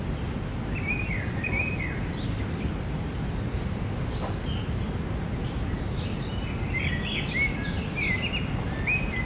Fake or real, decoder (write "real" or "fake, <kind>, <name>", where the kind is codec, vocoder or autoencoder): real